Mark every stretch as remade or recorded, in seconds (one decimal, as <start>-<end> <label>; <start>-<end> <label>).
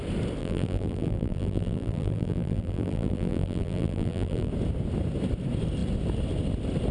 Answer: 0.0-0.4 recorded; 0.4-4.5 remade; 4.5-6.9 recorded